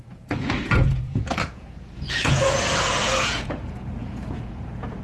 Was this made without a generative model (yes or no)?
no